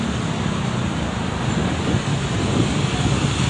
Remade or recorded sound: recorded